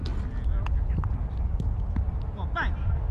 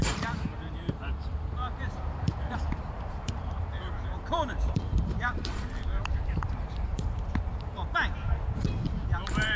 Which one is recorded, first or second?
first